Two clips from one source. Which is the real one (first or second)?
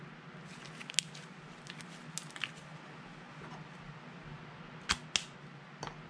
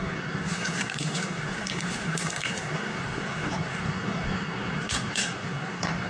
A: first